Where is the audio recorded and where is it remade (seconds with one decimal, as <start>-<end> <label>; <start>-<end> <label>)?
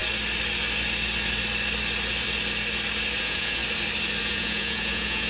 0.0-3.2 recorded; 3.2-3.6 remade; 3.6-4.2 recorded; 4.2-5.3 remade